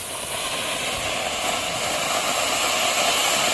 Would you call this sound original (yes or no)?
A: yes